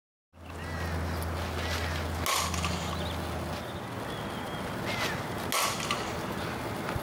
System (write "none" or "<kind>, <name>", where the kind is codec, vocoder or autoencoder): none